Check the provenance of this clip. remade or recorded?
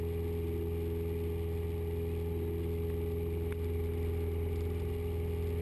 recorded